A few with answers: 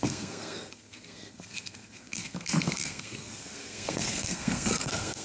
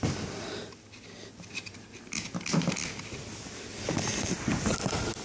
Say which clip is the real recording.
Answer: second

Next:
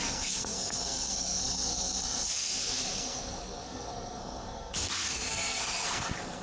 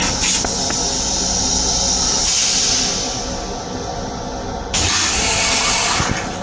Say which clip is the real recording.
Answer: second